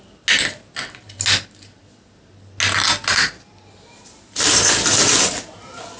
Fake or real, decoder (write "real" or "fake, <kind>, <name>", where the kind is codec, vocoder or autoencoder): real